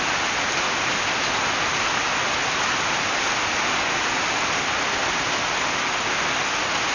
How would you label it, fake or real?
real